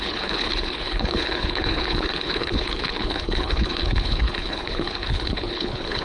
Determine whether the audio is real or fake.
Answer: fake